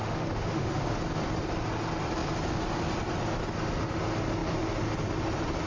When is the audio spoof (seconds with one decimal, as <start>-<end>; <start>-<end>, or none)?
0.0-1.0